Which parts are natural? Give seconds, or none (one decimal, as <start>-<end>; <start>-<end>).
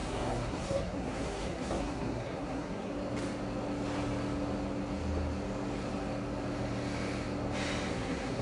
2.9-7.9